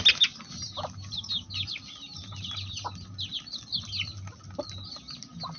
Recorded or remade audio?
recorded